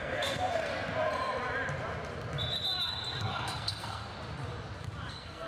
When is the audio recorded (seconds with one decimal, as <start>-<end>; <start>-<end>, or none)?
0.7-3.2; 4.1-5.1